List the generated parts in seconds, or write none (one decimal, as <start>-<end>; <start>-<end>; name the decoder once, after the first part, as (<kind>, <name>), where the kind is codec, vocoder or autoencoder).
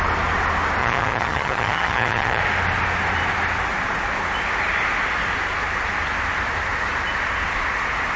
0.8-2.4 (vocoder, HiFi-GAN)